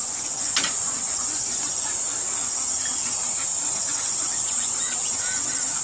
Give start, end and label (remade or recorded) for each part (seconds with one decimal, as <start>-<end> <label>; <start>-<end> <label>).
0.0-2.1 remade; 2.1-3.9 recorded; 3.9-4.9 remade; 4.9-5.8 recorded